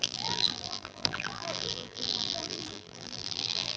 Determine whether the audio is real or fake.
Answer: fake